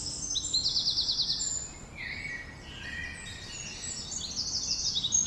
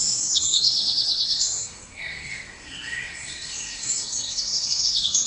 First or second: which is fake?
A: second